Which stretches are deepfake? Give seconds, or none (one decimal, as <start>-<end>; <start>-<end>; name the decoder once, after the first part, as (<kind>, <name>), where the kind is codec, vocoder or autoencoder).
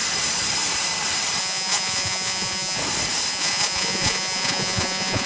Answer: 1.4-2.8 (vocoder, Vocos); 3.3-5.3